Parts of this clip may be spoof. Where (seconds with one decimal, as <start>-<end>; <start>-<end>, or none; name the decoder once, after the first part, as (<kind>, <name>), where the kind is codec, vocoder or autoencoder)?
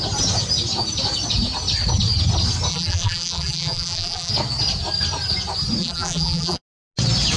2.7-4.3 (vocoder, BigVGAN v2); 5.8-6.6